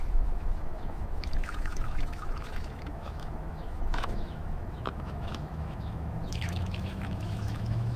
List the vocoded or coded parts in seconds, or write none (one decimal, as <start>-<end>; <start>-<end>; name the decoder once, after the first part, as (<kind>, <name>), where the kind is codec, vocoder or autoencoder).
0.0-8.0 (autoencoder, DAC-VAE)